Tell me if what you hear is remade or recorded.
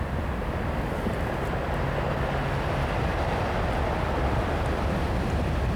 recorded